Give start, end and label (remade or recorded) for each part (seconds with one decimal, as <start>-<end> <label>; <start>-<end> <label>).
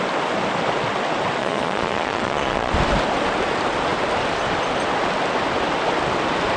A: 0.0-1.4 recorded; 1.4-2.7 remade; 2.7-6.6 recorded